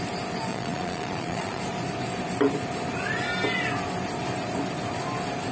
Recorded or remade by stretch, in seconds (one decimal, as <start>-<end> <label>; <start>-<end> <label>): 0.0-0.5 recorded; 0.5-1.6 remade; 1.6-5.5 recorded